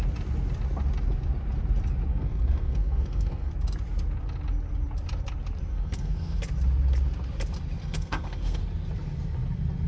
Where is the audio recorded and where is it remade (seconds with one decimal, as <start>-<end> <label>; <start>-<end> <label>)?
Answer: 0.0-2.1 recorded; 2.1-3.5 remade; 3.5-5.7 recorded; 5.7-6.4 remade; 6.4-7.8 recorded; 7.8-8.6 remade; 8.6-9.9 recorded